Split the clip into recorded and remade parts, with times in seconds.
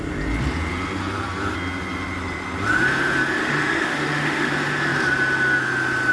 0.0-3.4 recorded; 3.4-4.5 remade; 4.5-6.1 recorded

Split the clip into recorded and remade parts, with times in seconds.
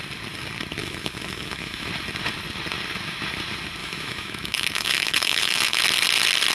0.0-0.8 recorded; 0.8-1.9 remade; 1.9-3.8 recorded; 3.8-5.8 remade; 5.8-6.5 recorded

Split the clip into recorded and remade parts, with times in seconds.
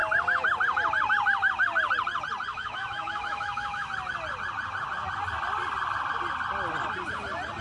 0.0-2.5 recorded; 2.5-3.9 remade; 3.9-7.6 recorded